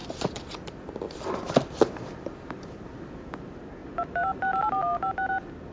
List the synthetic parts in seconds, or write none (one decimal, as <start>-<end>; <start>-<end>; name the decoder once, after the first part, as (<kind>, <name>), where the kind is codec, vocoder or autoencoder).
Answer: 0.0-3.4 (vocoder, BigVGAN v2)